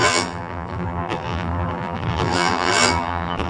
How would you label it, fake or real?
fake